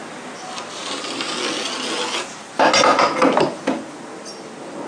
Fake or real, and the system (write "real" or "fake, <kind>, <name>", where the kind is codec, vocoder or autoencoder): real